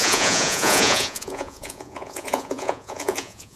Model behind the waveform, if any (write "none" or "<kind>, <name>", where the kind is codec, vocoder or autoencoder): vocoder, Vocos